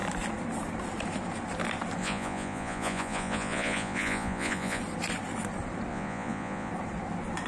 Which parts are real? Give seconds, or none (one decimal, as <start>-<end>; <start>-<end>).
0.0-2.0; 4.8-5.9; 6.7-7.5